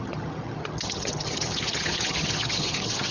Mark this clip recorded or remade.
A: remade